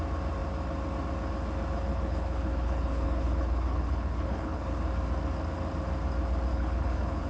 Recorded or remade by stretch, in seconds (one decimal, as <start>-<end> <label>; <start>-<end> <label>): 0.0-1.9 recorded; 1.9-4.7 remade; 4.7-6.5 recorded; 6.5-7.3 remade